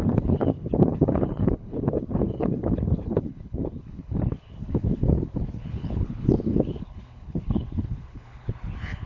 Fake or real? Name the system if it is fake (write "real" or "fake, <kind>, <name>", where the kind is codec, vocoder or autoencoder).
fake, codec, HILCodec